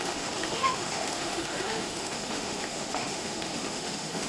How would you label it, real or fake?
fake